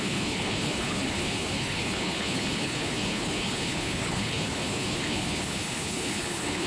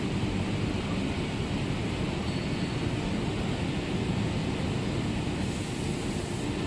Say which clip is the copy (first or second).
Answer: first